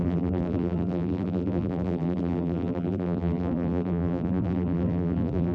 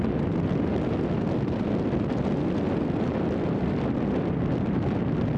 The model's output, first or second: first